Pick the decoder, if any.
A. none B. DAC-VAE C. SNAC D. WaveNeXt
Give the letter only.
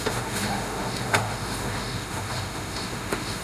B